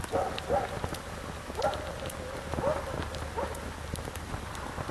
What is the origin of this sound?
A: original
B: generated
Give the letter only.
B